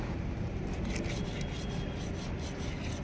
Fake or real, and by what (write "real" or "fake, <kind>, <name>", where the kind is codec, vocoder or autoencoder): real